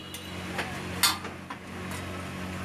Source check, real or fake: real